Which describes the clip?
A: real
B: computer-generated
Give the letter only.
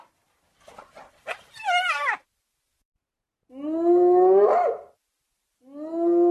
A